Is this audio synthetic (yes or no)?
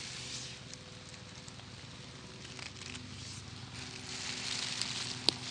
no